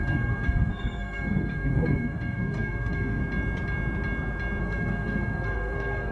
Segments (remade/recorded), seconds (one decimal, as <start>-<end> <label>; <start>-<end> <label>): 0.0-3.2 remade; 3.2-4.6 recorded; 4.6-6.1 remade